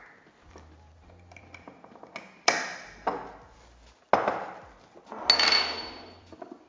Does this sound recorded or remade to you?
recorded